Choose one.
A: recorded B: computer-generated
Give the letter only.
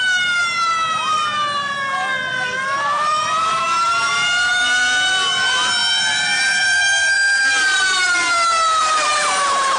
B